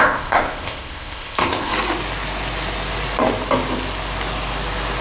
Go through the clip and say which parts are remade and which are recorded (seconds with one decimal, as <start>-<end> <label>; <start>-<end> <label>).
0.0-1.7 remade; 1.7-5.0 recorded